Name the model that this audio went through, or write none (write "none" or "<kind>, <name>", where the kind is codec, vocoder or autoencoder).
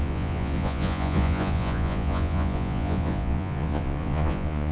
vocoder, Vocos